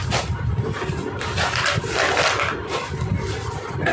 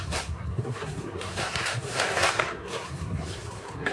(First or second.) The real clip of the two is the first